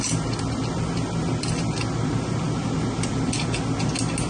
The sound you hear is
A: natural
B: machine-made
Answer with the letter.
A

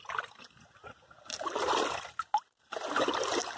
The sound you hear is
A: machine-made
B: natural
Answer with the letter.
B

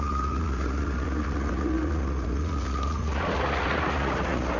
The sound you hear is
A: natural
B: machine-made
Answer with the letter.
B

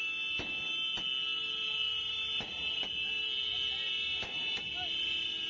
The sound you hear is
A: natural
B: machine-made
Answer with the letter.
A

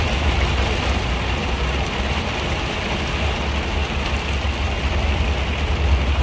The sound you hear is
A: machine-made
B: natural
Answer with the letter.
B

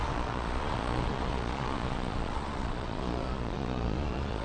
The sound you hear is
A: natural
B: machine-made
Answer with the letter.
B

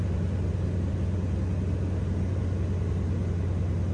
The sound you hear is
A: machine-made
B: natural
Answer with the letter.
B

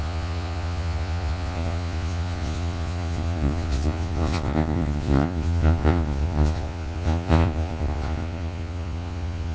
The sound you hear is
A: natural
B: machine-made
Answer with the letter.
B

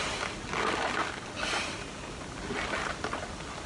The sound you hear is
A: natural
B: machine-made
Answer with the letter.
A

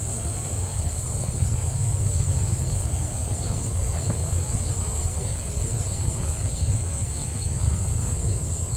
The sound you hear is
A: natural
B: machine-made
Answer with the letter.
B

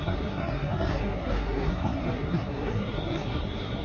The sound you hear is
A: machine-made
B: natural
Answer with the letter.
A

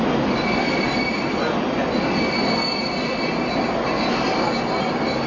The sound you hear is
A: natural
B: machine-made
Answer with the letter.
A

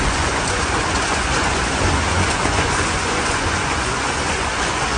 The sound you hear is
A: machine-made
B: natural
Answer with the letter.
A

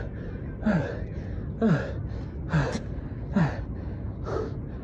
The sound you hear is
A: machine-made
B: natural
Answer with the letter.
B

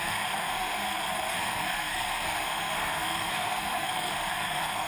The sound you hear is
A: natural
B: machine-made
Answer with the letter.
B